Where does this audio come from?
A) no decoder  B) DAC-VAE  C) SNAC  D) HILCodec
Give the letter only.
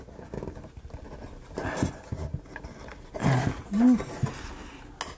A